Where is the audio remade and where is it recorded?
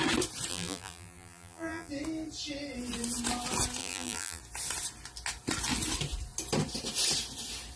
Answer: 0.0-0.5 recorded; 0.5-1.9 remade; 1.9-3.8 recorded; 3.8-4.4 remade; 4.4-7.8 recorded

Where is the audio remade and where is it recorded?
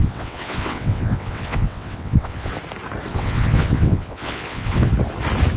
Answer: 0.0-2.5 remade; 2.5-3.1 recorded; 3.1-4.9 remade; 4.9-5.6 recorded